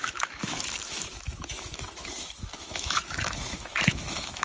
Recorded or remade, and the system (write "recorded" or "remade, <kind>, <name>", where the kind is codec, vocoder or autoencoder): remade, autoencoder, DAC-VAE